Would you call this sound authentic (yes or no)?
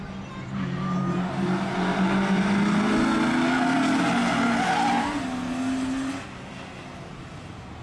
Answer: yes